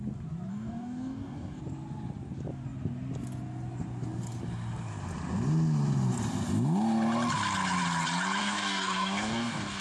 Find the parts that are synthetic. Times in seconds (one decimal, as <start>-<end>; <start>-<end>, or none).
0.5-1.6; 8.4-9.8